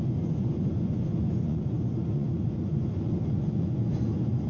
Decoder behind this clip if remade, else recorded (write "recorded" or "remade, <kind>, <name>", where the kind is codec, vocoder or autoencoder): remade, vocoder, Vocos